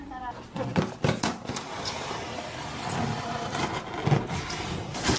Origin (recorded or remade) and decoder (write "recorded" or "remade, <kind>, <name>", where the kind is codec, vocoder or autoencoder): recorded